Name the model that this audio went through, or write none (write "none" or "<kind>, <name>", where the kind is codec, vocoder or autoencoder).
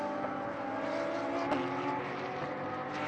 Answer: none